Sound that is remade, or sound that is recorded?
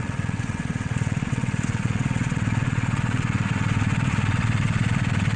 remade